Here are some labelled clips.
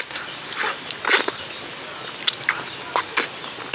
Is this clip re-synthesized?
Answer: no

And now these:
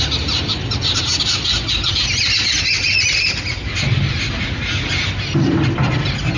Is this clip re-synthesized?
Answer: no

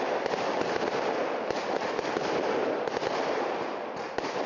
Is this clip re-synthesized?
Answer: no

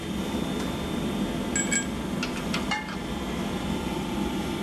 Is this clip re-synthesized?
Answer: no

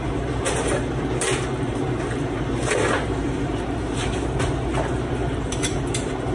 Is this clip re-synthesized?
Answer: yes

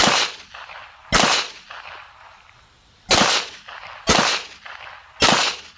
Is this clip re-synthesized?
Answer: no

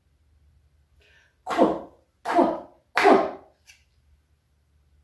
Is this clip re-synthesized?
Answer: no